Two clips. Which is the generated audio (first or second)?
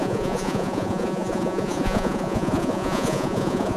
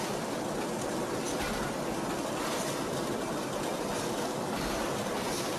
first